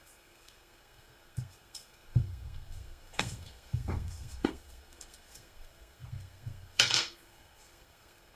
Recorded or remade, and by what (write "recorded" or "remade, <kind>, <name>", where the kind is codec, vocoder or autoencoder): remade, codec, SNAC